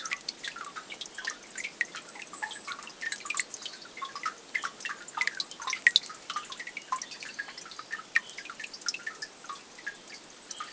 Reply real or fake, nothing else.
real